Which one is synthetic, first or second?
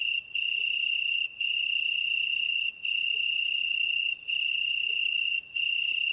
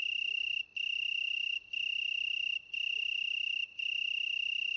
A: first